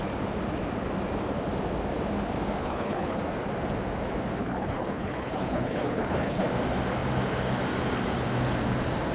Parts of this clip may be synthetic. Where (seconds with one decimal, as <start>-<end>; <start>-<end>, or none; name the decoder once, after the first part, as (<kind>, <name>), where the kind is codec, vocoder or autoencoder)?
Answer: 2.6-3.2 (codec, HILCodec); 4.4-6.5